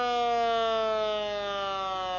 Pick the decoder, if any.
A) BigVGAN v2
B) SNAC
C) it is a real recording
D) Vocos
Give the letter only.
C